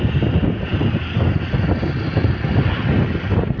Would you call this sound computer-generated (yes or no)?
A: no